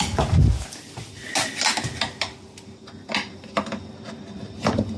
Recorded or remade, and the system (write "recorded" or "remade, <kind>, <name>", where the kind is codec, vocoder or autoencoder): recorded